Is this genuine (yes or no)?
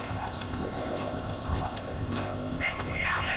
no